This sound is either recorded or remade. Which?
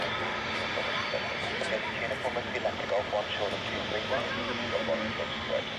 recorded